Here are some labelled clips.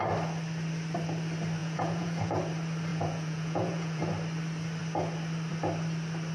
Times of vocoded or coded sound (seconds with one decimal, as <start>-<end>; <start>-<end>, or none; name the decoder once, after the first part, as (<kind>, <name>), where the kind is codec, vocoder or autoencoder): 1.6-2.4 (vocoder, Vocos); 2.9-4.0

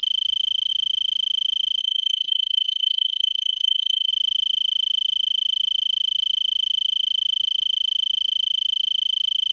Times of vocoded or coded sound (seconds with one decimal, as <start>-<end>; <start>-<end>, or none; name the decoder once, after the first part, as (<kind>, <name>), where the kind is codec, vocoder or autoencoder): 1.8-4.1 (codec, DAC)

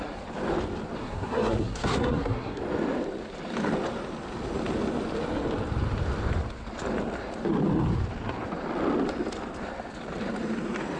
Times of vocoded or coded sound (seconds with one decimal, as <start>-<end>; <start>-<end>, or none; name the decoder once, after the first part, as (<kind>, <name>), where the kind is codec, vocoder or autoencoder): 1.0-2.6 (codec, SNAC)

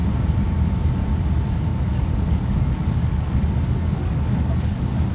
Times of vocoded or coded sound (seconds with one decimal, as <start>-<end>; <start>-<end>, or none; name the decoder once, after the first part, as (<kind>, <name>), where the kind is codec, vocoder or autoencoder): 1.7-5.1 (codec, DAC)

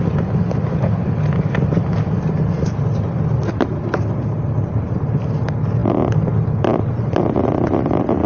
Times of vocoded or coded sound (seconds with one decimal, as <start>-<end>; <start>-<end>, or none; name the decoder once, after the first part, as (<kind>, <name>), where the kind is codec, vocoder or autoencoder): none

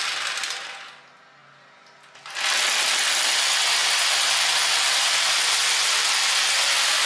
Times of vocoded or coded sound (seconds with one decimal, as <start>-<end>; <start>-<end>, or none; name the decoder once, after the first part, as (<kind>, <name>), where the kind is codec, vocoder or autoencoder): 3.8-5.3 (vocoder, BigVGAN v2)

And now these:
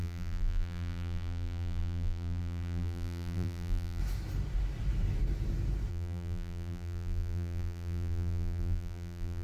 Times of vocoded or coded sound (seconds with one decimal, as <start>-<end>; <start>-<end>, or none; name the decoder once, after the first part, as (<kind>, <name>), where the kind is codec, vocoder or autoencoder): 0.0-4.0 (vocoder, BigVGAN v2); 5.9-9.4